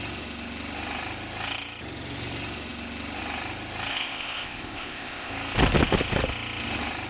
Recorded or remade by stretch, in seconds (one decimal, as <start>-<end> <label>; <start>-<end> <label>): 0.0-3.9 recorded; 3.9-5.3 remade; 5.3-7.1 recorded